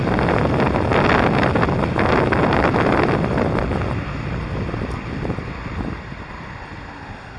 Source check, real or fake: real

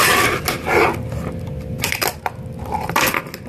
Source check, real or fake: real